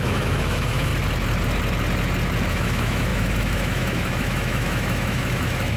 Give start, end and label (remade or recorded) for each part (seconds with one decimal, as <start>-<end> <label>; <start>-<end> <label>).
0.0-0.9 remade; 0.9-2.5 recorded; 2.5-5.8 remade